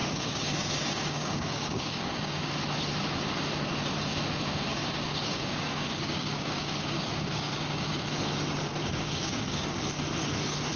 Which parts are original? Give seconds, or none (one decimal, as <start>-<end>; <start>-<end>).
2.5-4.7; 8.2-8.8; 9.8-10.8